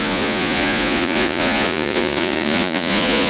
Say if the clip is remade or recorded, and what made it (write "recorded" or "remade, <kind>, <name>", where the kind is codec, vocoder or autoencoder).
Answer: remade, vocoder, Vocos